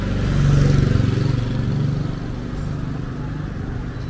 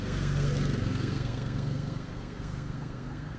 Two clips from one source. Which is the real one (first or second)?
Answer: first